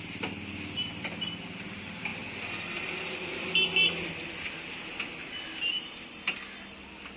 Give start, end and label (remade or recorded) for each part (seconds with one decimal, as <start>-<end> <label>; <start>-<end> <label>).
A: 0.0-7.2 recorded